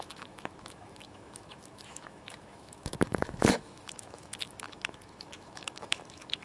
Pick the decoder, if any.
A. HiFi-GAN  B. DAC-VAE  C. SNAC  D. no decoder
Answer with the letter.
B